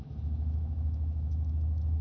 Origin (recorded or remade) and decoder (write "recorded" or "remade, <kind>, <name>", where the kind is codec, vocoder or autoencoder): remade, autoencoder, DAC-VAE